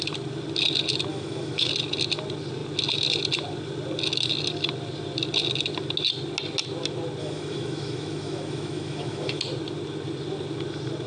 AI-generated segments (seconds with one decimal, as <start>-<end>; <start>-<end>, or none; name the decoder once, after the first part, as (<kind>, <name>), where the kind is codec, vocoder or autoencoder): 1.1-1.7 (autoencoder, DAC-VAE); 7.2-9.4